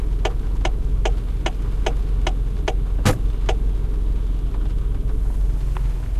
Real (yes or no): yes